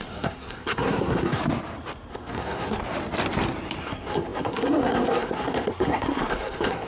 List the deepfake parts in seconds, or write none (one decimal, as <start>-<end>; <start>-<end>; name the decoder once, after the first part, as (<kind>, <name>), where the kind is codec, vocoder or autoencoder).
0.0-1.4 (codec, SNAC); 2.1-2.8; 3.8-6.9